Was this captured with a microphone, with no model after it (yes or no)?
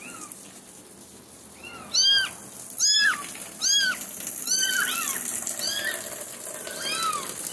yes